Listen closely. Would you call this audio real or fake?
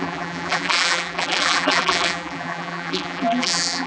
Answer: fake